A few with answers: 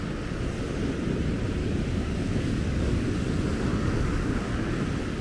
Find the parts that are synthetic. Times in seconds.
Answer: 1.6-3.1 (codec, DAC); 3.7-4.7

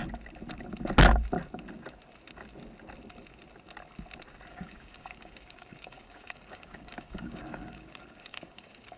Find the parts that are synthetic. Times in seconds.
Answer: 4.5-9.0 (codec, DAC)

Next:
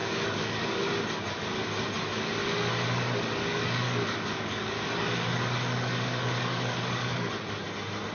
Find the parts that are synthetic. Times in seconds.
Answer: 0.0-0.9 (codec, DAC); 2.4-7.3

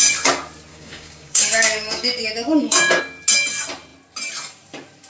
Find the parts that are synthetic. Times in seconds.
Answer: 0.7-3.0 (codec, DAC)

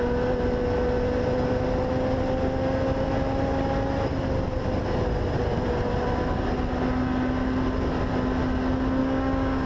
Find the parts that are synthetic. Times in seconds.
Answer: 9.0-9.7 (codec, DAC)

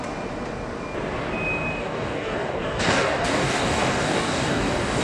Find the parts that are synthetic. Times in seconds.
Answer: 1.8-5.0 (codec, DAC)

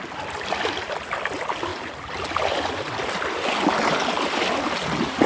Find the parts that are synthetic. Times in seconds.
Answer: none

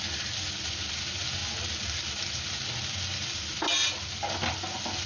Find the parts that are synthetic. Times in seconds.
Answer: none